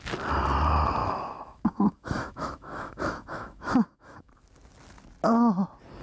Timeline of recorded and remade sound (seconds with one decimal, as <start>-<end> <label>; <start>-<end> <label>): 0.0-1.0 recorded; 1.0-4.3 remade; 4.3-6.0 recorded